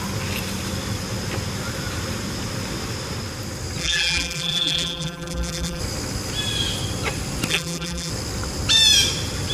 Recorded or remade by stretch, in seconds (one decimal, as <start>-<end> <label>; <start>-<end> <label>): 0.0-3.8 recorded; 3.8-5.8 remade; 5.8-7.5 recorded; 7.5-8.1 remade; 8.1-9.5 recorded